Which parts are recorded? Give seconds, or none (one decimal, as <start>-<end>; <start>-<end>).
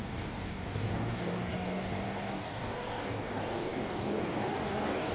none